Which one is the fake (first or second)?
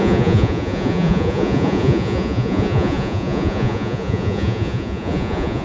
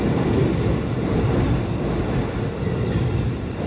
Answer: first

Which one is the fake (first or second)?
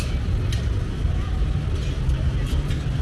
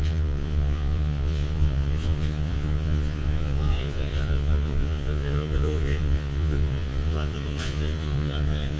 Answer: second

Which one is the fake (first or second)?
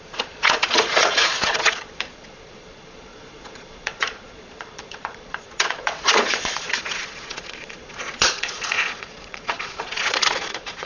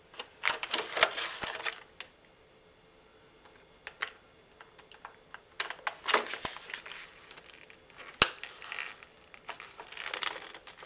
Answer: first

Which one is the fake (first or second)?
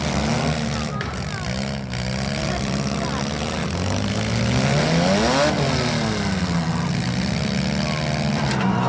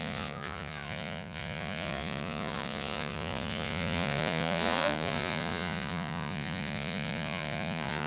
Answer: second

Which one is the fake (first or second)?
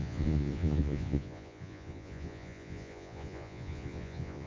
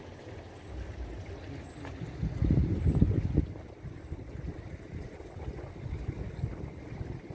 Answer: first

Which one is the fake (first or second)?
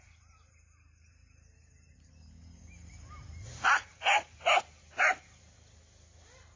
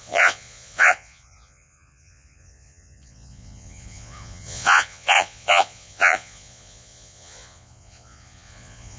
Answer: second